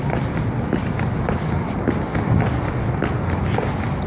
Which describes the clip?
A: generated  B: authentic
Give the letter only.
B